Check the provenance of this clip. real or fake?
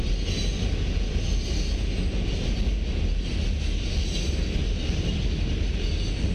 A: real